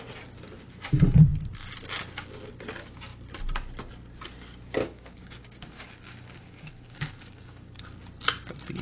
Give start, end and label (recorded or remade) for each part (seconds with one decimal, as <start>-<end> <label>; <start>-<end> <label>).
0.0-4.8 recorded; 4.8-7.8 remade; 7.8-8.8 recorded